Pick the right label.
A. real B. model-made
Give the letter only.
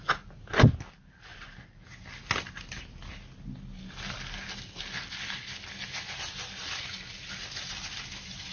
A